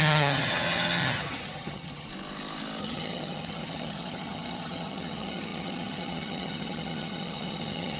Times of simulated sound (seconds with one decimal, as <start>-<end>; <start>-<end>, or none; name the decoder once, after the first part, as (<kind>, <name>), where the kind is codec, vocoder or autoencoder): 0.0-2.1 (vocoder, HiFi-GAN); 2.8-8.0